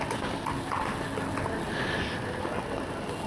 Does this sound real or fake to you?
real